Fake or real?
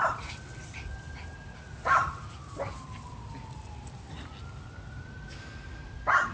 real